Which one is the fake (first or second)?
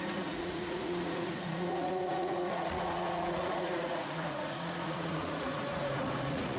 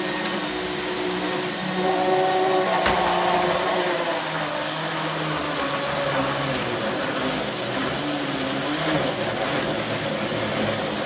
first